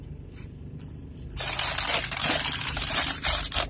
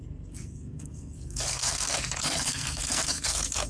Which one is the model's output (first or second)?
second